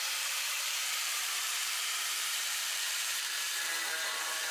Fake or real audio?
fake